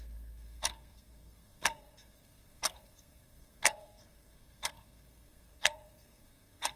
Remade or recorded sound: remade